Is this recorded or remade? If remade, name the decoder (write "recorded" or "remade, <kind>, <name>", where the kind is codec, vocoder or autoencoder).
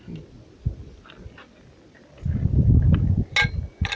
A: recorded